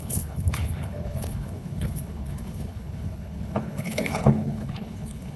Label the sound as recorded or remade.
remade